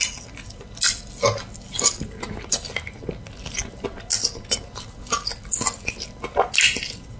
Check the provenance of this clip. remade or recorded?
recorded